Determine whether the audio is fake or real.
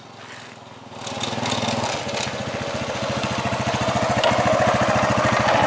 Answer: real